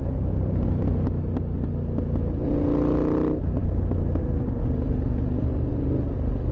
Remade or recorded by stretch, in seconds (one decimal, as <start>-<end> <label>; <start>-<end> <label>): 0.0-6.5 recorded